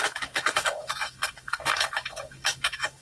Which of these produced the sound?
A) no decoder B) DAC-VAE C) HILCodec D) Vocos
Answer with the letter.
B